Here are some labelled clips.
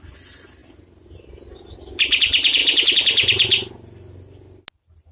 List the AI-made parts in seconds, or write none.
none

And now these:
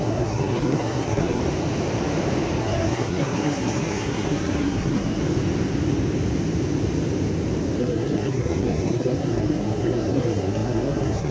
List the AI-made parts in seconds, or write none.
0.0-1.4 (codec, SNAC); 2.6-5.2; 7.8-11.3

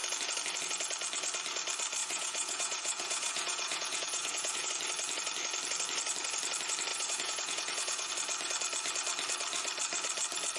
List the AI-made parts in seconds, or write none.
2.0-4.7 (vocoder, Vocos); 6.9-8.1